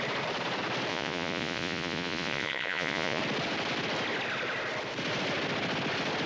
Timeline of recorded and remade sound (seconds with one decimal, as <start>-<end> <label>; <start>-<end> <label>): 0.0-0.9 recorded; 0.9-3.2 remade; 3.2-6.3 recorded